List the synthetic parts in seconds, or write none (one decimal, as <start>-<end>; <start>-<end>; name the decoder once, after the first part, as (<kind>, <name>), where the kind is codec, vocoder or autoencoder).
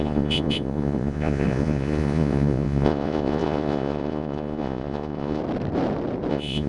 0.0-5.4 (vocoder, Vocos); 6.3-6.7